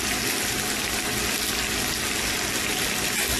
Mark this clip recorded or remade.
recorded